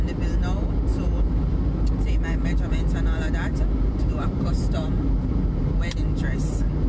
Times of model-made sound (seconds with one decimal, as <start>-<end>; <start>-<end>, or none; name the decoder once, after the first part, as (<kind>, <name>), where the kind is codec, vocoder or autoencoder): 3.5-5.3 (vocoder, BigVGAN v2)